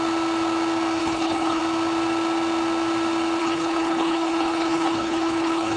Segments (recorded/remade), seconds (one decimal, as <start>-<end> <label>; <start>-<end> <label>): 0.0-1.0 recorded; 1.0-1.6 remade; 1.6-3.4 recorded; 3.4-5.8 remade

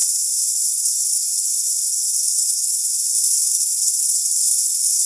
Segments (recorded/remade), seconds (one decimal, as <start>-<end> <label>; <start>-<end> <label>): 0.0-0.5 recorded; 0.5-2.9 remade; 2.9-3.5 recorded; 3.5-5.1 remade